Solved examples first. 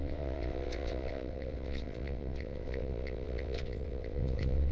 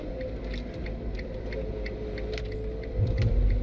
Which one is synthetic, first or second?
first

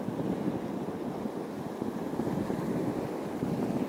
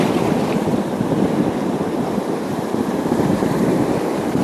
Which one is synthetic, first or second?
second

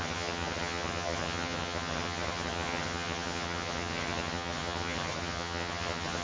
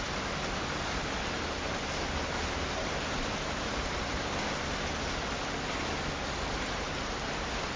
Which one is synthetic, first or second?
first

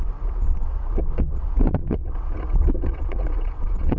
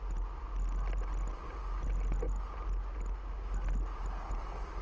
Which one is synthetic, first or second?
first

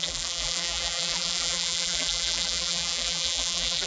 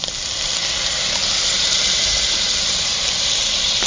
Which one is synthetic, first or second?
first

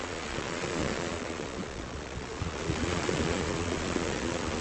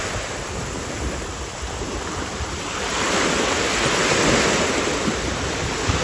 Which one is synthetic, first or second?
first